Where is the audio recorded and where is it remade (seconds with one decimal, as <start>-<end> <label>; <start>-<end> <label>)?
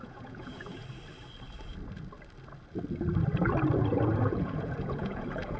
0.0-0.8 remade; 0.8-4.2 recorded; 4.2-5.6 remade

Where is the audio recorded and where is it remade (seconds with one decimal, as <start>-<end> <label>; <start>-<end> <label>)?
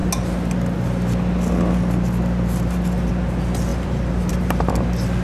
0.0-3.7 recorded; 3.7-4.7 remade; 4.7-5.2 recorded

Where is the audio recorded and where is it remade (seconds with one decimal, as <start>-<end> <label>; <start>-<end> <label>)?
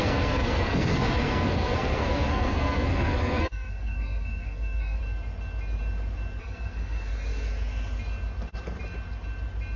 0.0-5.0 remade; 5.0-6.4 recorded; 6.4-7.1 remade; 7.1-9.8 recorded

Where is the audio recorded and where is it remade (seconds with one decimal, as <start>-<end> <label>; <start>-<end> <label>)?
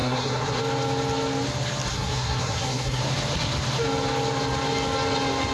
0.0-0.6 remade; 0.6-1.9 recorded; 1.9-3.0 remade; 3.0-5.5 recorded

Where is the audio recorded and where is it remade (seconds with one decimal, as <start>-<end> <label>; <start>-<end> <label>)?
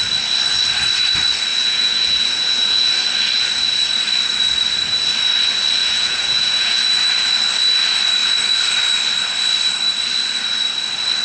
0.0-1.5 recorded; 1.5-2.9 remade; 2.9-5.8 recorded; 5.8-6.8 remade; 6.8-11.2 recorded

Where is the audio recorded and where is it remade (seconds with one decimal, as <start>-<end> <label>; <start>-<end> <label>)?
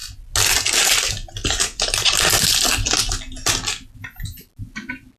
0.0-5.2 recorded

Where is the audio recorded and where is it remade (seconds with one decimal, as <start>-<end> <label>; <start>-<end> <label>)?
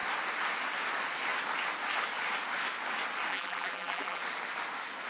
0.0-3.3 recorded; 3.3-4.2 remade; 4.2-5.1 recorded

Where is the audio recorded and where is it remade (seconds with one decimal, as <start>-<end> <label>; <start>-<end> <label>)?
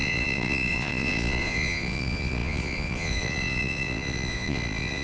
0.0-5.0 remade